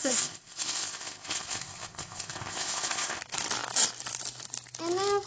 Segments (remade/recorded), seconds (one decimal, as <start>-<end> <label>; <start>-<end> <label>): 0.0-3.2 remade; 3.2-5.3 recorded